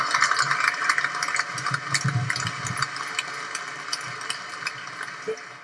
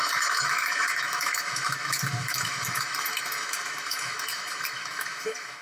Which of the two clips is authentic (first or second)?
first